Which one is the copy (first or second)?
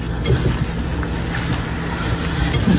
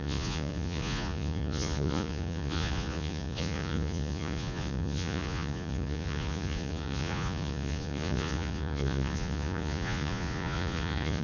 second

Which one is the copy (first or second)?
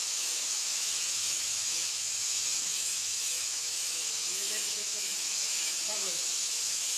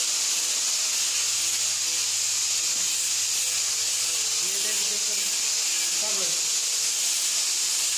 first